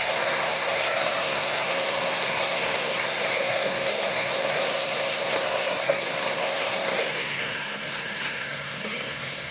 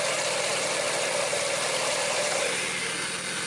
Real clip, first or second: second